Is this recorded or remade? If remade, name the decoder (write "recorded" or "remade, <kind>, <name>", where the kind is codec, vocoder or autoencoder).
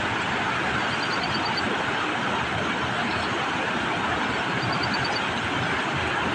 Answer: recorded